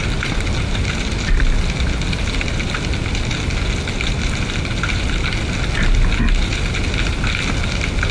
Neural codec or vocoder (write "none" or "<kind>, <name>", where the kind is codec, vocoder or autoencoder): none